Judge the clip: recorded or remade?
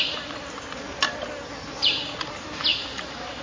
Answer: remade